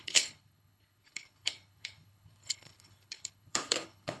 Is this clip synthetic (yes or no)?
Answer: yes